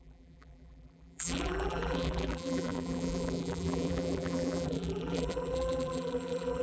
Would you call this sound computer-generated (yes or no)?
yes